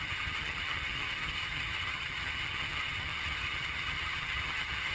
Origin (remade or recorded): remade